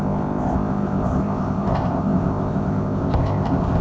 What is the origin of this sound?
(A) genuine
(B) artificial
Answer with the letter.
B